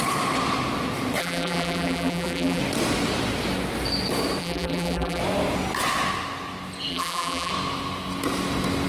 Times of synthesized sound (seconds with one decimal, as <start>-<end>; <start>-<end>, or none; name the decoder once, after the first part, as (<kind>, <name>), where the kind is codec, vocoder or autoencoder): 1.2-2.6 (vocoder, BigVGAN v2); 4.4-5.2; 6.9-7.5